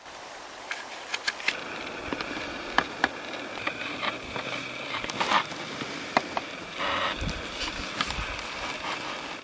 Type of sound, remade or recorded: remade